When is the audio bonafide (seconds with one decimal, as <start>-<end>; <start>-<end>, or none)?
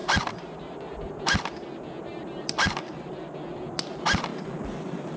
1.1-2.1; 2.9-4.3